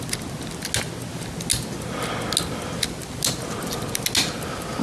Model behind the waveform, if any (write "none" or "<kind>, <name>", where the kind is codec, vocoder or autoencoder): none